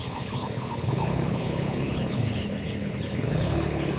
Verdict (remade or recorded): remade